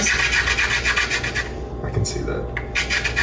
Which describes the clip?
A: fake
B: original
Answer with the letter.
B